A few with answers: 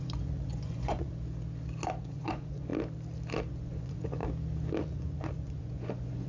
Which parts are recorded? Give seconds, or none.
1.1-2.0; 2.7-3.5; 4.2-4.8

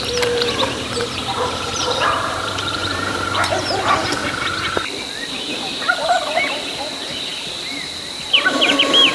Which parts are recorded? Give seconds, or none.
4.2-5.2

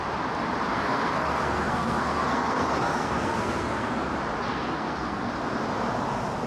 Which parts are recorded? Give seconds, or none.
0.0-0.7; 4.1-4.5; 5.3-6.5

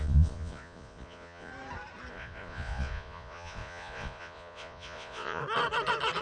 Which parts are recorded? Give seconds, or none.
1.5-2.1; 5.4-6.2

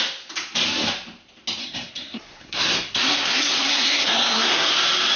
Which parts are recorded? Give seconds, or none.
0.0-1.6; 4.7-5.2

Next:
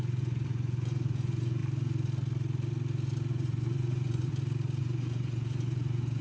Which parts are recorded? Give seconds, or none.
1.6-3.3; 4.3-4.8

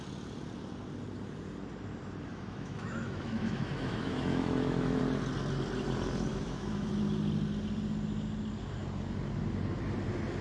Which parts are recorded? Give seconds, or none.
0.0-2.3; 5.0-6.3; 6.9-10.4

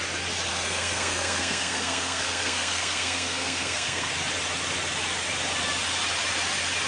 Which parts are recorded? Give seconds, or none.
0.0-0.5; 4.1-6.9